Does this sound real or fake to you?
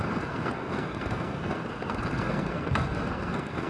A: fake